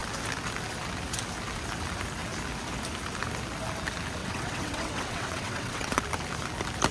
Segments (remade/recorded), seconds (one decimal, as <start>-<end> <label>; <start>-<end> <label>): 0.0-4.2 recorded; 4.2-6.0 remade; 6.0-6.9 recorded